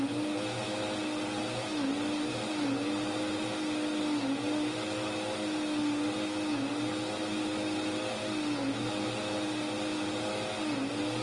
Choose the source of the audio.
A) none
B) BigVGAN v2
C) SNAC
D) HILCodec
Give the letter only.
A